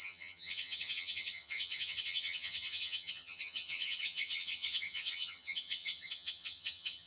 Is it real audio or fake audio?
fake